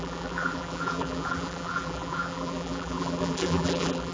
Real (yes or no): no